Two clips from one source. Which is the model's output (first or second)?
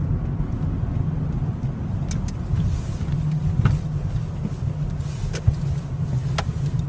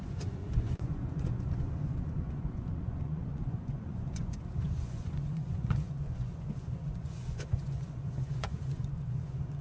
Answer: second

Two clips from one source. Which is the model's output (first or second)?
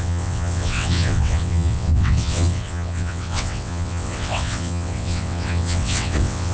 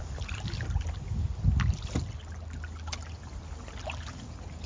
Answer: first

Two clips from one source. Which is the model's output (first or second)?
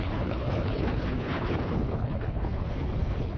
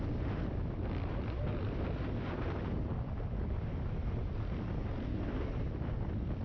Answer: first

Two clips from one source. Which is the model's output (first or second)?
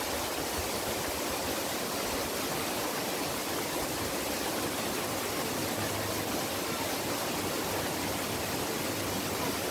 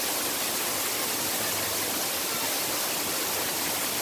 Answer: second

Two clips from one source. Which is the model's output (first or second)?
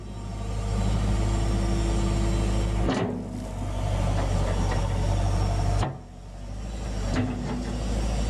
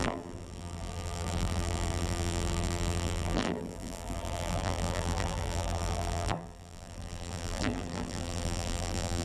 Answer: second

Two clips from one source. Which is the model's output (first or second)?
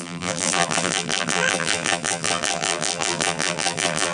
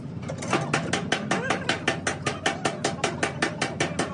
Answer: first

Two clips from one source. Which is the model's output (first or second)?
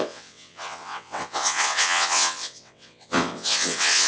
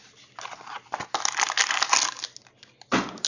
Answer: first